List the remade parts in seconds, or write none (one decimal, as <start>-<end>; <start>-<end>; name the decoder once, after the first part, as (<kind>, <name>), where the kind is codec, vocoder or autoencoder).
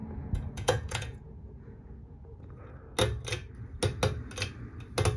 0.0-2.7 (vocoder, Vocos)